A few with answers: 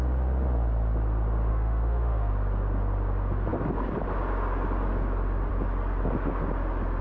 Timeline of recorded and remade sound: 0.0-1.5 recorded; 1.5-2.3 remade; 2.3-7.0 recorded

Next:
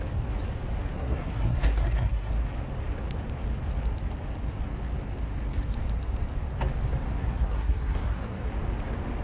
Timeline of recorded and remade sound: 0.0-0.9 recorded; 0.9-2.3 remade; 2.3-7.2 recorded; 7.2-8.5 remade; 8.5-9.2 recorded